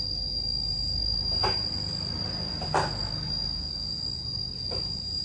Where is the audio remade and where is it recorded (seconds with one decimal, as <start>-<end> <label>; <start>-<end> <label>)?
0.0-5.2 recorded